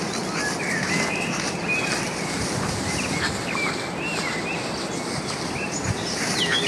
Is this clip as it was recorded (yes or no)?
yes